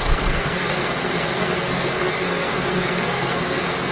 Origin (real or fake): fake